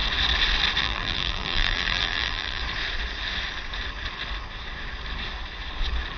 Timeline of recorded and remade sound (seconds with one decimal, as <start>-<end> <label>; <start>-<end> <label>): 0.0-0.8 recorded; 0.8-2.6 remade; 2.6-6.2 recorded